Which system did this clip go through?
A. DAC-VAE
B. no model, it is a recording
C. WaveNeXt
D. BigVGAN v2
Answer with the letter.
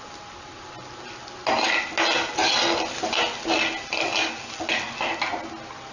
B